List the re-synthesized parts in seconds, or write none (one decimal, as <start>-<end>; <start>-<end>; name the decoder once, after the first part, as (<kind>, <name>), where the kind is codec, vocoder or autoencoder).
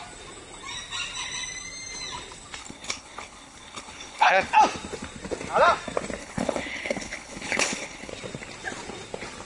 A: 2.6-4.5 (codec, HILCodec); 6.2-8.1